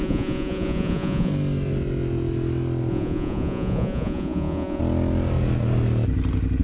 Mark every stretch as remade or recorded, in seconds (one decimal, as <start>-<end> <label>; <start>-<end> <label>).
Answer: 0.0-1.3 remade; 1.3-2.9 recorded; 2.9-4.8 remade; 4.8-6.6 recorded